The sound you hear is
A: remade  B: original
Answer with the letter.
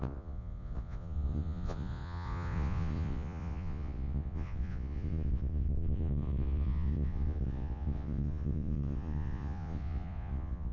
A